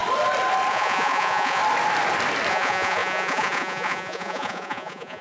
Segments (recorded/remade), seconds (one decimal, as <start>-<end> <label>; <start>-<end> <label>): 0.0-0.7 recorded; 0.7-1.6 remade; 1.6-2.5 recorded; 2.5-5.2 remade